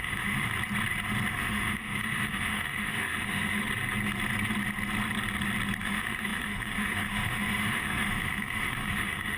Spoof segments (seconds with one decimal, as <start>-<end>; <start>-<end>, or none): 0.0-0.5; 1.3-3.6; 5.8-9.4